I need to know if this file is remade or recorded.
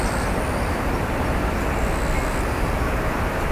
recorded